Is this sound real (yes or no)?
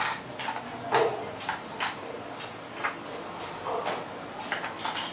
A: yes